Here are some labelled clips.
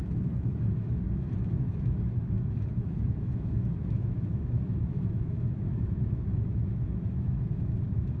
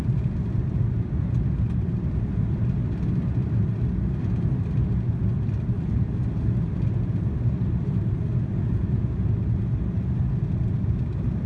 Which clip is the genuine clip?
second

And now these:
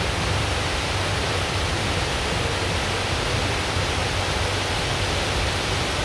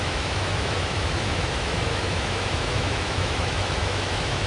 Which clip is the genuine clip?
first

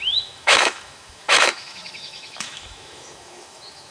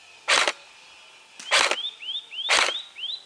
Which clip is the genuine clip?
second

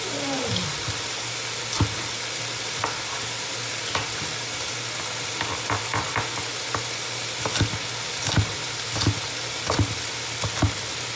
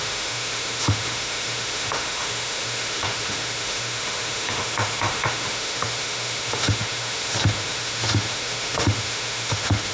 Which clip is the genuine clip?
first